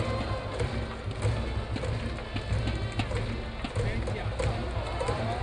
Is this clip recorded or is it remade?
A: recorded